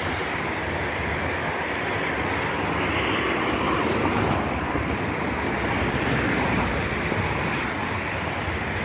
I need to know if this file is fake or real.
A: real